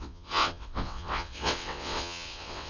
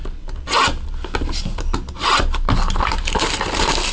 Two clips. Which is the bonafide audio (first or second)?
second